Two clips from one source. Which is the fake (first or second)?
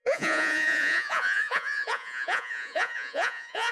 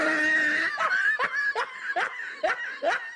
first